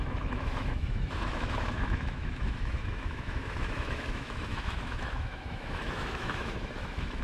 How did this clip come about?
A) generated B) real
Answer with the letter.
A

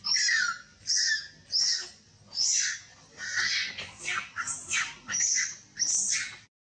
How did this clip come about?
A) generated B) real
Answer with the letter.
B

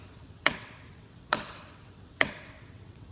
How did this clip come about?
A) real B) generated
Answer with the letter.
B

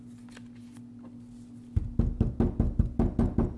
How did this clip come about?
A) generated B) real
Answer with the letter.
B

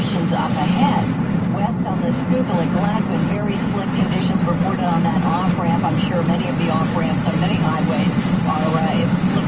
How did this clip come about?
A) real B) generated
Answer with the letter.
B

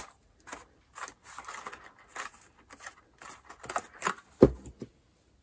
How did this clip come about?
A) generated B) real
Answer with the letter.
B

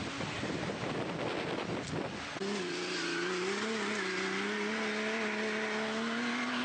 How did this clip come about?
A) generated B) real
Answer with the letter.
B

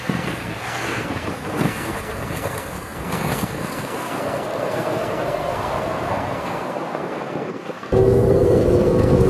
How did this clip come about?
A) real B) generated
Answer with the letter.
B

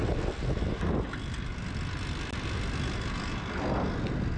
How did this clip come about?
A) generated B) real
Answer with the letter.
B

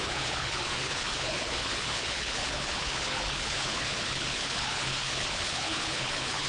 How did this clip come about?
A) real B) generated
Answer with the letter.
B